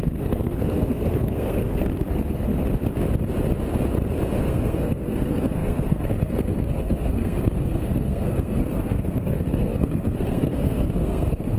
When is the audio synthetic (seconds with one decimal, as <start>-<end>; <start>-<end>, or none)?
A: 0.0-2.5; 4.4-11.6